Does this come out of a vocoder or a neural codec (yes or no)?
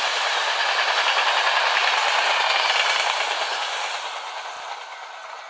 no